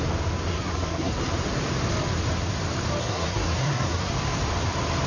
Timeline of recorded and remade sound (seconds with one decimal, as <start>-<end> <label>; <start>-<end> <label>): 0.0-0.5 recorded; 0.5-1.2 remade; 1.2-3.0 recorded; 3.0-4.1 remade; 4.1-5.1 recorded